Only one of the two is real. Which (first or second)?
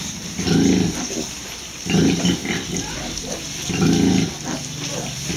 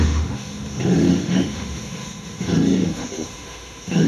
first